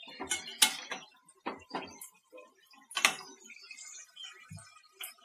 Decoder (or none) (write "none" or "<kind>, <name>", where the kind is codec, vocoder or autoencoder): none